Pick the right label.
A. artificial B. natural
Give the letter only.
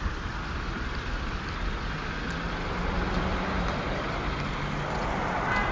B